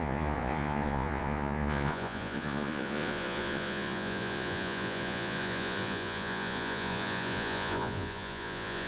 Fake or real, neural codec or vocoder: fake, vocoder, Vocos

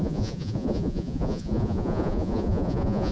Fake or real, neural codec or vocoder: fake, vocoder, Vocos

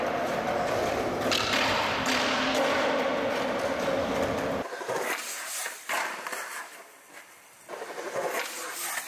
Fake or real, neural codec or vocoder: real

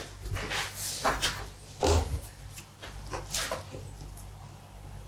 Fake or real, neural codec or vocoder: real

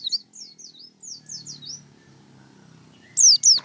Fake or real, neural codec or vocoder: real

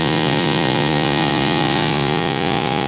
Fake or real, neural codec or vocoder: fake, vocoder, Vocos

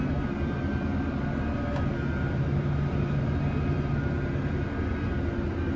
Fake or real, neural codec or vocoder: real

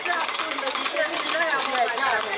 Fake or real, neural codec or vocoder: real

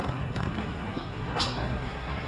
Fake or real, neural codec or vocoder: fake, codec, SNAC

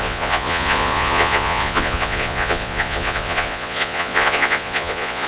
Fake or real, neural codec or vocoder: fake, vocoder, Vocos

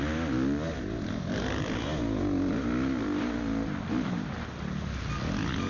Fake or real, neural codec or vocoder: real